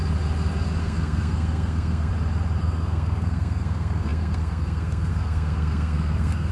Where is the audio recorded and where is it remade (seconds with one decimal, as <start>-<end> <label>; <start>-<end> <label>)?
0.0-0.8 recorded; 0.8-2.1 remade; 2.1-2.6 recorded; 2.6-6.5 remade

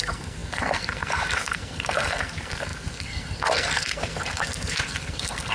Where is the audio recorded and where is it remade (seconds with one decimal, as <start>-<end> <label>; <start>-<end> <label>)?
0.0-5.5 remade

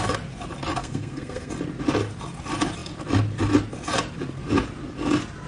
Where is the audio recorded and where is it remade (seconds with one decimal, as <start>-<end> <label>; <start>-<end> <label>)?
0.0-0.8 recorded; 0.8-1.5 remade; 1.5-5.5 recorded

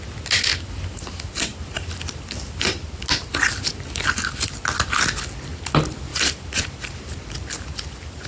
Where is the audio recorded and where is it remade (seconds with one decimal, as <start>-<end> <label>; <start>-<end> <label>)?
0.0-8.3 recorded